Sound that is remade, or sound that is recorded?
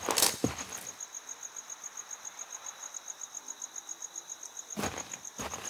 recorded